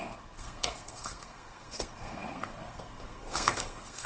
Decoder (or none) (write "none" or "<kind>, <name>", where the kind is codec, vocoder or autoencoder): codec, SNAC